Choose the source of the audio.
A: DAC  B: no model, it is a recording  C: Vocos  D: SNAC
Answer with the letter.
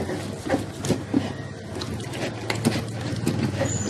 B